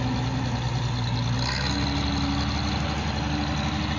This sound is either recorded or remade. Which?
recorded